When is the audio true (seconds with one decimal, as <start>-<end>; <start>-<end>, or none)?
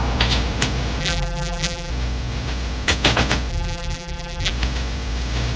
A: 0.0-1.0; 1.9-3.5; 4.5-5.6